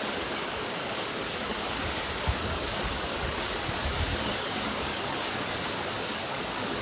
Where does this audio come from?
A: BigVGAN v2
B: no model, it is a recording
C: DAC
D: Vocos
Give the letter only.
C